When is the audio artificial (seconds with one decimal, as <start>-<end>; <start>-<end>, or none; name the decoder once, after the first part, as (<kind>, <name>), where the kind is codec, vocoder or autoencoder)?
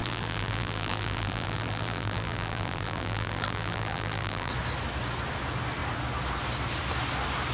0.0-4.5 (vocoder, BigVGAN v2)